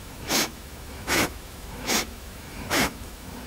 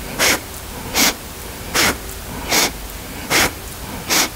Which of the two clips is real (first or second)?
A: second